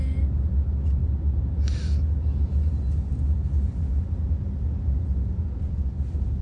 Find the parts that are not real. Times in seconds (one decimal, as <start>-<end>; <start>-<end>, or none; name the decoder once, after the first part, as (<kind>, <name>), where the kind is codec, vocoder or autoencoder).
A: none